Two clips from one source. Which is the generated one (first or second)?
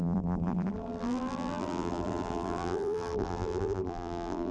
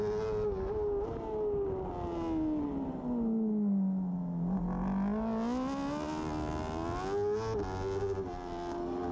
first